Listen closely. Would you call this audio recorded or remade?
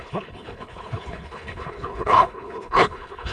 remade